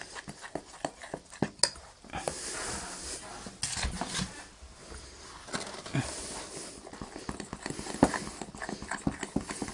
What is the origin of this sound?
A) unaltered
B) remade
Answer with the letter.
A